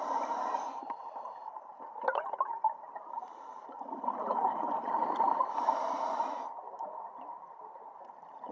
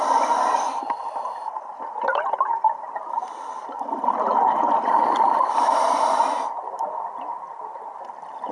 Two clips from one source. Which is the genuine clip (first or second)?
second